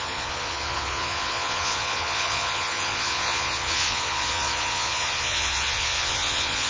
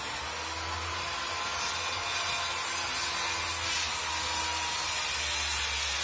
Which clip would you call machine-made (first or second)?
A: first